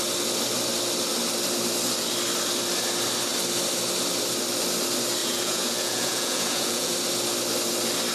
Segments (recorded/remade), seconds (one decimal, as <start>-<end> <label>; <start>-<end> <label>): 0.0-5.2 recorded; 5.2-6.9 remade; 6.9-8.1 recorded